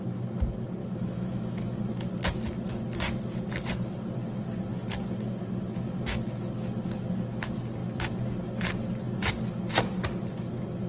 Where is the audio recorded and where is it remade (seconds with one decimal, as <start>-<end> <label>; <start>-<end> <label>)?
0.0-0.8 recorded; 0.8-1.8 remade; 1.8-10.9 recorded